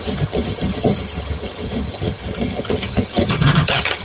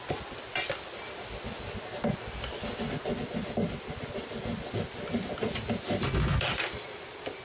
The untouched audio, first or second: second